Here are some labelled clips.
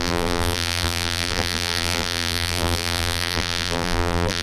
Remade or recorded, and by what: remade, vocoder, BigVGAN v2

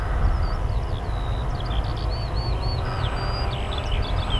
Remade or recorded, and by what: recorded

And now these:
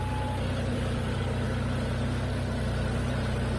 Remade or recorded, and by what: recorded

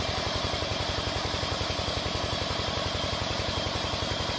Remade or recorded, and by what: remade, vocoder, BigVGAN v2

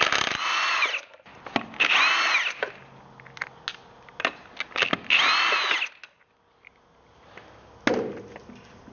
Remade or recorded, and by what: recorded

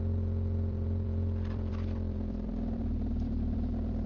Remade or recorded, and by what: remade, vocoder, BigVGAN v2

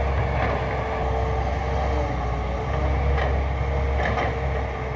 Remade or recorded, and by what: recorded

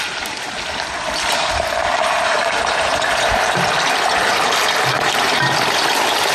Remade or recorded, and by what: recorded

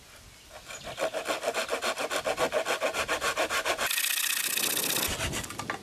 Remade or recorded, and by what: recorded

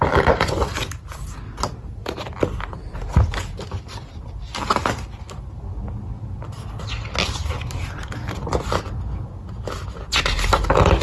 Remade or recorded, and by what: recorded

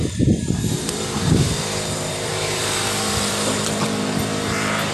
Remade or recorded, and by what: remade, vocoder, BigVGAN v2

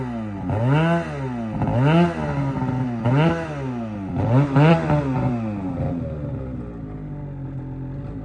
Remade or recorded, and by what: recorded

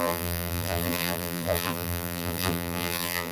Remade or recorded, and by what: remade, vocoder, BigVGAN v2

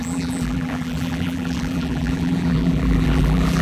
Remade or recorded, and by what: remade, vocoder, BigVGAN v2